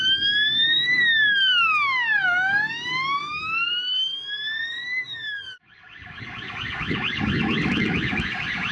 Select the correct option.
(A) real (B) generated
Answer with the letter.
B